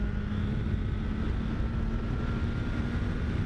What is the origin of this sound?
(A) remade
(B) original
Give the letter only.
B